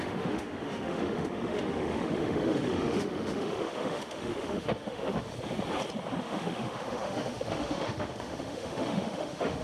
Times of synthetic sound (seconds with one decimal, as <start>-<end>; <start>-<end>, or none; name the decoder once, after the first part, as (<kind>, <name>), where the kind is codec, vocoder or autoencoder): 0.0-5.3 (autoencoder, DAC-VAE); 6.2-9.6